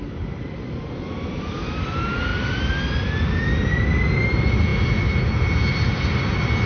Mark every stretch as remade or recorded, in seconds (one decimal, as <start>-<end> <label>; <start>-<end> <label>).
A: 0.0-6.7 recorded